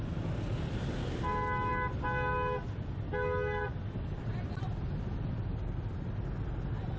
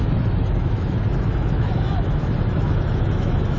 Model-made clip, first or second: second